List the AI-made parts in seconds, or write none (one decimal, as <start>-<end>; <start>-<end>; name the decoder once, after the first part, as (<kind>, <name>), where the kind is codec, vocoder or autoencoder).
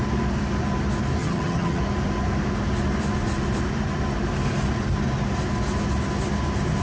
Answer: 1.2-1.8 (vocoder, HiFi-GAN)